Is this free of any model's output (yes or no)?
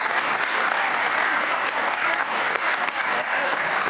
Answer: no